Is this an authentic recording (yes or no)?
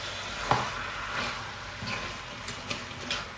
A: yes